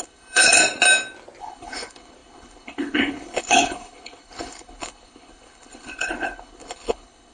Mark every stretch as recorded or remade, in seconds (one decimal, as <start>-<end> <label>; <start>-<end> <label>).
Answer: 0.0-0.6 remade; 0.6-1.4 recorded; 1.4-7.3 remade